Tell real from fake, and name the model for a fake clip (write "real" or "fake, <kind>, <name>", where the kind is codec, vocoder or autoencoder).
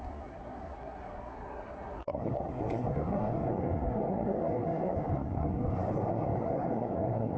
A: fake, codec, SNAC